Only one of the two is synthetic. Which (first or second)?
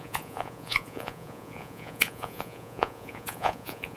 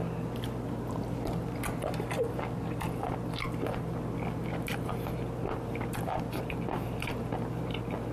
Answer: first